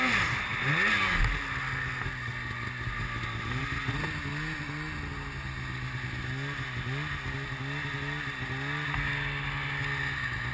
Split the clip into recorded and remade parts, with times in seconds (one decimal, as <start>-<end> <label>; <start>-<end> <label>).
0.0-10.5 recorded